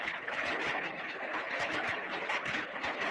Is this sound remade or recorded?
remade